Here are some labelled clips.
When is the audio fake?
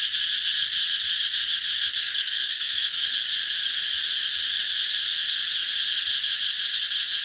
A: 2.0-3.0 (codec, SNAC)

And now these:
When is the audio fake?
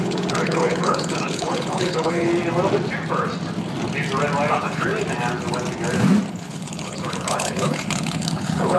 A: 0.0-2.3 (codec, HILCodec); 4.5-4.9; 6.3-8.8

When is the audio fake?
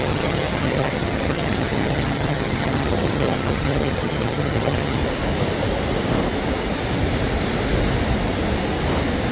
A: 0.0-5.0 (vocoder, HiFi-GAN)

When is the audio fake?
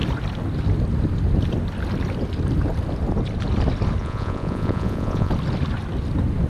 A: 4.0-5.3 (vocoder, Vocos)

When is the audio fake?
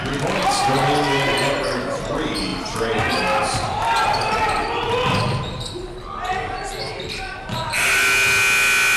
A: none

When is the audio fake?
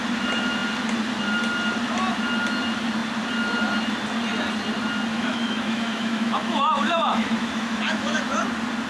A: 5.1-8.2 (autoencoder, DAC-VAE)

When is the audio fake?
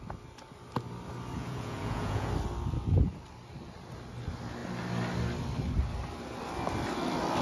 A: 1.4-2.3 (vocoder, Vocos)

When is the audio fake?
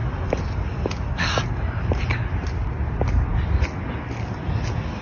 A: none